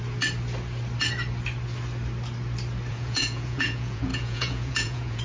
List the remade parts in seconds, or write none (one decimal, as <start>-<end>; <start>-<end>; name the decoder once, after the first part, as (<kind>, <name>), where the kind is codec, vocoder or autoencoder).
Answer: 2.9-5.2 (vocoder, Vocos)